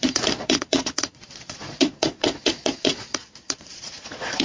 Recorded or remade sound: remade